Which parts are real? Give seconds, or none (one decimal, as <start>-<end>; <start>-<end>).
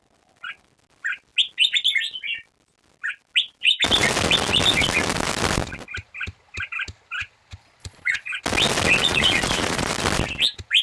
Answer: 0.0-7.8; 8.4-9.0; 9.9-10.8